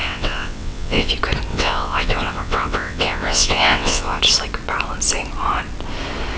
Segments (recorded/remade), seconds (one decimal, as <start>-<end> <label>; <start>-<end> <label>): 0.0-1.1 remade; 1.1-1.5 recorded; 1.5-4.2 remade; 4.2-6.4 recorded